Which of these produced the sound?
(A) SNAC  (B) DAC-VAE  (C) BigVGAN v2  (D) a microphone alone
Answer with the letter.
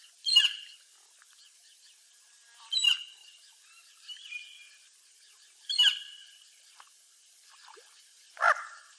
C